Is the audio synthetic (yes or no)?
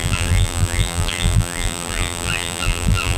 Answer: yes